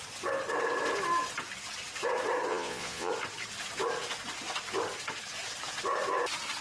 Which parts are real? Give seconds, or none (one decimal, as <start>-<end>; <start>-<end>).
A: 0.0-2.5; 3.1-6.6